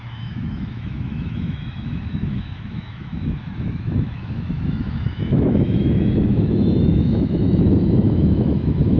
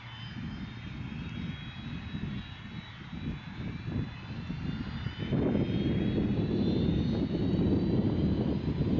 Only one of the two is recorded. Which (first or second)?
second